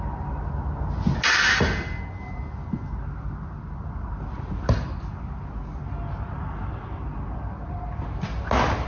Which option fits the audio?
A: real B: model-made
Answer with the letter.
A